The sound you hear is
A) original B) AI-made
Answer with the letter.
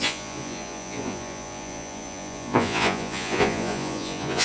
B